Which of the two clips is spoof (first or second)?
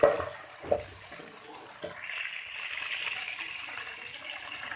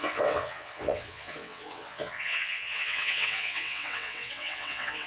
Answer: second